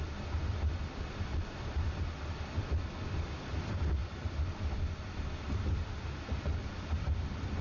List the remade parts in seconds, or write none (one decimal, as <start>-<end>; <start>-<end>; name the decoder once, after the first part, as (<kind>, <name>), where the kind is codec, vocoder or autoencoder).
0.0-7.6 (vocoder, BigVGAN v2)